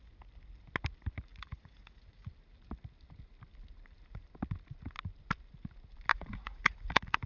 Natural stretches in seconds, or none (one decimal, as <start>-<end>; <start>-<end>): 0.0-1.3; 2.3-6.1